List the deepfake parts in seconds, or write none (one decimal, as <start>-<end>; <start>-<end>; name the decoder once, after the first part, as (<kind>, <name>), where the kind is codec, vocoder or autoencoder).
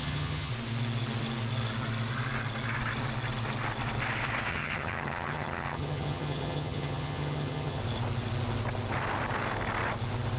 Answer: 0.0-0.5 (vocoder, HiFi-GAN); 4.5-7.8